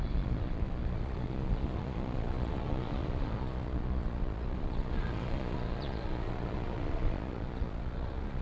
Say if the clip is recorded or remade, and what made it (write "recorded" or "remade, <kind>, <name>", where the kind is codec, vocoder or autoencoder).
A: remade, vocoder, Vocos